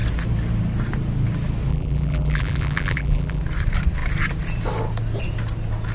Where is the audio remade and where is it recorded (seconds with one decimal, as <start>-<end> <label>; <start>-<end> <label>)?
0.0-1.7 recorded; 1.7-3.4 remade; 3.4-5.9 recorded